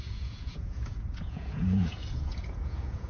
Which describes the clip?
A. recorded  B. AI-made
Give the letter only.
B